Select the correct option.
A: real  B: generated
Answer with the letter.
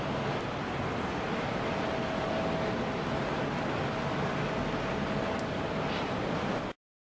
A